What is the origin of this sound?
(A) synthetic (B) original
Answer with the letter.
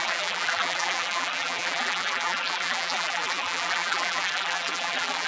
A